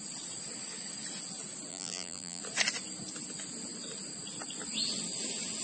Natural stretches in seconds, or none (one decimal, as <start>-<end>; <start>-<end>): 0.0-1.7; 2.4-5.6